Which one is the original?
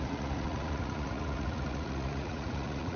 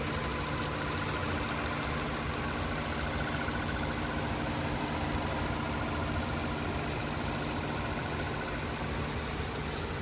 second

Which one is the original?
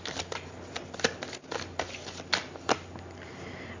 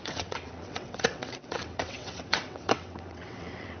first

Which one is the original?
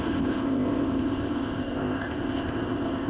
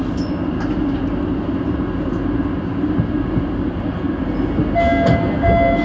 second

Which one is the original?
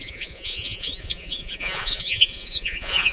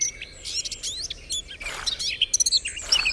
second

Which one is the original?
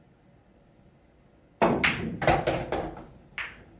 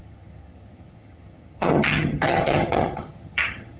first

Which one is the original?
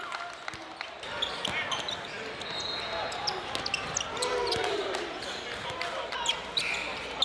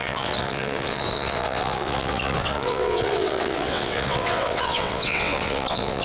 first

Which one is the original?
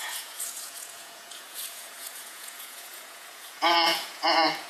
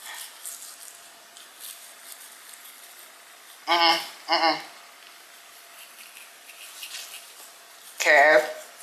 second